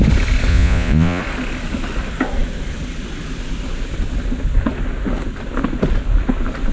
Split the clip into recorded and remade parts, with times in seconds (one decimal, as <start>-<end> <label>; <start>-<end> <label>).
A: 0.0-0.5 recorded; 0.5-1.2 remade; 1.2-6.7 recorded